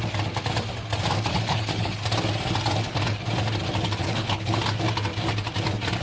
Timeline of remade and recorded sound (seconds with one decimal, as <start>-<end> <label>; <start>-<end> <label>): 0.0-1.3 recorded; 1.3-2.0 remade; 2.0-4.0 recorded; 4.0-4.6 remade; 4.6-6.0 recorded